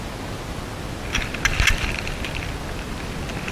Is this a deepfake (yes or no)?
no